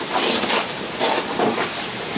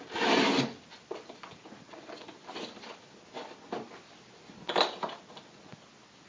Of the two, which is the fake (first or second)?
first